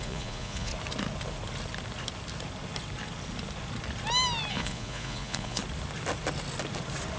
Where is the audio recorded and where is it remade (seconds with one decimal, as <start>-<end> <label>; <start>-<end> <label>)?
0.0-0.7 remade; 0.7-4.5 recorded; 4.5-5.6 remade; 5.6-7.2 recorded